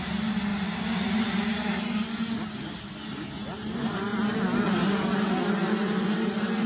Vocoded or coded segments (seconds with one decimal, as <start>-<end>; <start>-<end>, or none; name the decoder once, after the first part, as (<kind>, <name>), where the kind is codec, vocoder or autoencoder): none